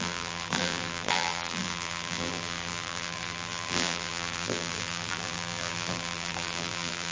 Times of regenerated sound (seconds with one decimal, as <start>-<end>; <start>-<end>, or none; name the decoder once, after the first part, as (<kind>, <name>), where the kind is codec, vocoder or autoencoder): 0.0-7.1 (vocoder, BigVGAN v2)